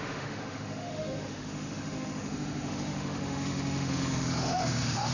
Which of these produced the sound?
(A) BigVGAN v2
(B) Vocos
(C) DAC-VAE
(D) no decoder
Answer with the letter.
C